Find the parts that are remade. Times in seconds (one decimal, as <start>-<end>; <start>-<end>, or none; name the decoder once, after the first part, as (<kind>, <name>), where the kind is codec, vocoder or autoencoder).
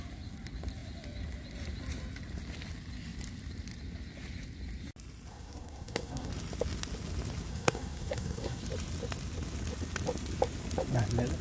5.3-6.3 (codec, SNAC); 7.5-8.6